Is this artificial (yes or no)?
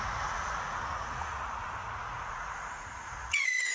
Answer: yes